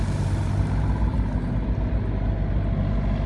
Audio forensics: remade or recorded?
recorded